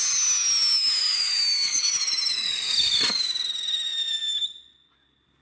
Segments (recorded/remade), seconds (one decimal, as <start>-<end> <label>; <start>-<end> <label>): 0.0-1.0 recorded; 1.0-1.9 remade; 1.9-2.3 recorded; 2.3-3.0 remade; 3.0-5.4 recorded